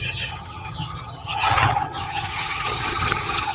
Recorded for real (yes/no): no